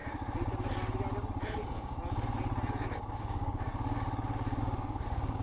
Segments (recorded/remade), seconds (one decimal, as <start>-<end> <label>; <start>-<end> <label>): 0.0-3.2 recorded; 3.2-3.7 remade; 3.7-4.6 recorded; 4.6-5.4 remade